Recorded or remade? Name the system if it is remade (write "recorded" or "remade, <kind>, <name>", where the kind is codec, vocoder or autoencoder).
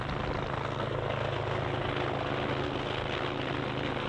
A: recorded